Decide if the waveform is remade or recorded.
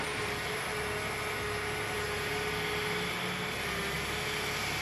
recorded